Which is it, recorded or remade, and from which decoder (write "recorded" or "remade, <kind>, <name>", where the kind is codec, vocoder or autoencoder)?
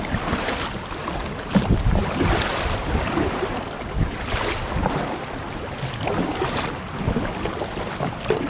recorded